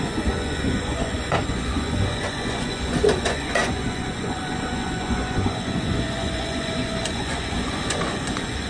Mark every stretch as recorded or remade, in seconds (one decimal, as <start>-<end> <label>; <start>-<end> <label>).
0.0-8.7 remade